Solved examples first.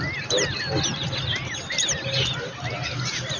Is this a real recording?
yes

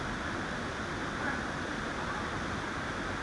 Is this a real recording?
yes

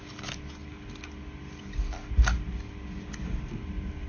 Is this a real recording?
yes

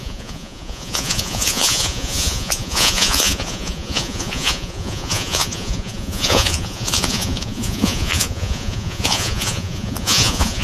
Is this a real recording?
no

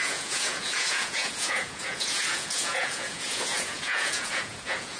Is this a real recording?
no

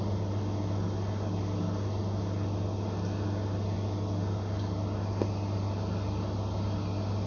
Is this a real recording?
yes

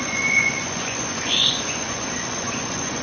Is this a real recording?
no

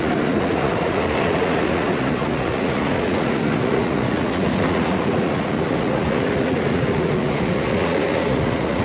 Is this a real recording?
no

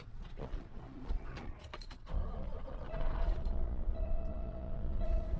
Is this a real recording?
no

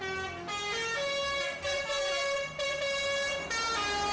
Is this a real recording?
yes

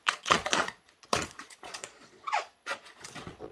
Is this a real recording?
no